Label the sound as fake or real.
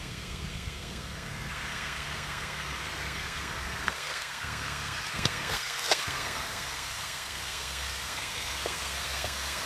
fake